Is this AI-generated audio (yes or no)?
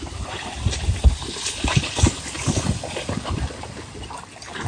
yes